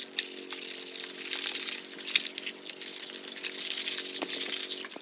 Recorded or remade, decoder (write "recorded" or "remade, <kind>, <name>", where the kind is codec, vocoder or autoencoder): recorded